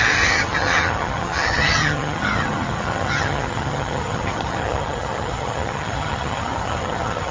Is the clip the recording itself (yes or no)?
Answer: no